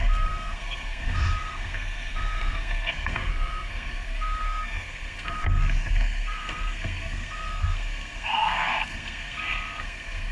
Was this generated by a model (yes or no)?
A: yes